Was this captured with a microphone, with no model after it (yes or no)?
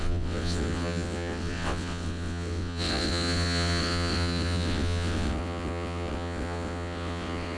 no